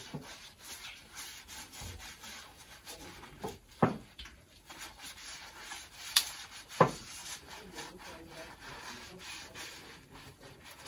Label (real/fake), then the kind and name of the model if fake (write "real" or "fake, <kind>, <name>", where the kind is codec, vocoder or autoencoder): fake, vocoder, BigVGAN v2